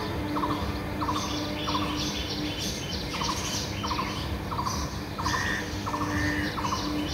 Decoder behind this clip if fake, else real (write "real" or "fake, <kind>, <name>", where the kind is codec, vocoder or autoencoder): real